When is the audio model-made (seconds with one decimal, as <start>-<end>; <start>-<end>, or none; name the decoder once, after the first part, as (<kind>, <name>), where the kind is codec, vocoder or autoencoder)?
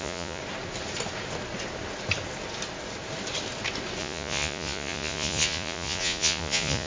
0.0-0.4 (vocoder, Vocos); 4.0-6.9